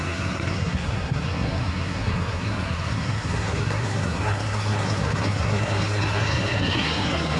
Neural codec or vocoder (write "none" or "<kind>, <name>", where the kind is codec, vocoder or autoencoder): codec, SNAC